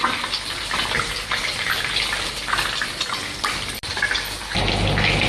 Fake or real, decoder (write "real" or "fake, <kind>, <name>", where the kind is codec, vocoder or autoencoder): real